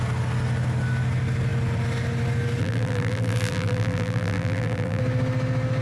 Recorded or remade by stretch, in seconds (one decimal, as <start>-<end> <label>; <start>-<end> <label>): 0.0-2.6 recorded; 2.6-5.0 remade; 5.0-5.8 recorded